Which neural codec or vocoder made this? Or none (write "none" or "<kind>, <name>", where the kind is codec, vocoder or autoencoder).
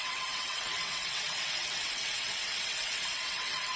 vocoder, WaveNeXt